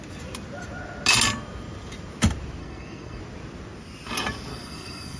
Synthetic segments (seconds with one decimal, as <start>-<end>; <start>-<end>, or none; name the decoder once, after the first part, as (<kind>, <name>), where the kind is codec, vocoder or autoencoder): 2.6-3.2 (codec, SNAC); 4.5-5.2